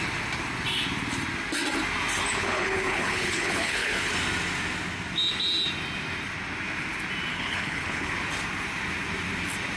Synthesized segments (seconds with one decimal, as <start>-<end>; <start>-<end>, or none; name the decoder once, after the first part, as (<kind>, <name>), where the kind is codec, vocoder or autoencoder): 2.3-4.1 (codec, HILCodec); 7.3-8.1